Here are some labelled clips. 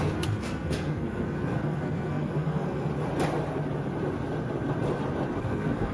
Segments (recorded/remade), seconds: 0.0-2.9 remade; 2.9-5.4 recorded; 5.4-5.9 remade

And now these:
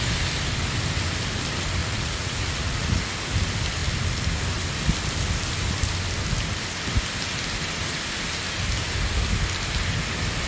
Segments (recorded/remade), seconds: 0.0-1.8 recorded; 1.8-3.1 remade; 3.1-10.5 recorded

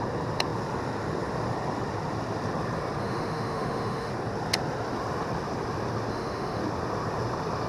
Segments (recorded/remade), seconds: 0.0-3.0 recorded; 3.0-4.1 remade; 4.1-6.1 recorded; 6.1-6.6 remade; 6.6-7.7 recorded

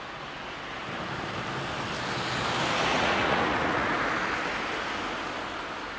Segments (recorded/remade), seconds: 0.0-2.9 recorded; 2.9-4.0 remade; 4.0-6.0 recorded

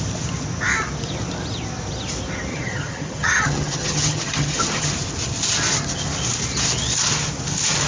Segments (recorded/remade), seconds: 0.0-2.5 recorded; 2.5-4.9 remade; 4.9-7.9 recorded

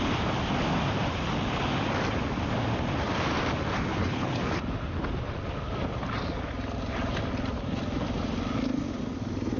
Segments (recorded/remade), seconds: 0.0-3.9 recorded; 3.9-4.4 remade; 4.4-9.6 recorded

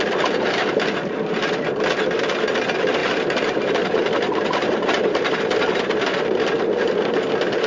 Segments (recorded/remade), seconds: 0.0-3.0 recorded; 3.0-5.4 remade; 5.4-7.7 recorded